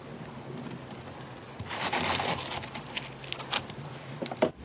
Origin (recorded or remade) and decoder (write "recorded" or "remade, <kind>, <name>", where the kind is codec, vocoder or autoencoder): recorded